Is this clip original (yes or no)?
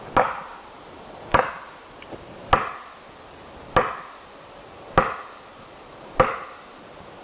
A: yes